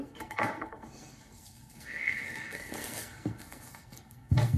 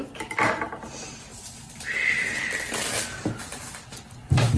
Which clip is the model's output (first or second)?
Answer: first